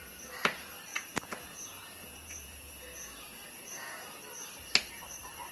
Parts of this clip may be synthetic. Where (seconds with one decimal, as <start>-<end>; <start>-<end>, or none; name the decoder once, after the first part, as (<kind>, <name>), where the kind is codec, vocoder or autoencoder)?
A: 0.9-4.2 (vocoder, Vocos)